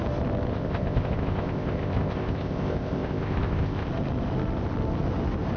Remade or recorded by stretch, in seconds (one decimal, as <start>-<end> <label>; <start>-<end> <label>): 0.0-0.5 recorded; 0.5-3.9 remade; 3.9-5.6 recorded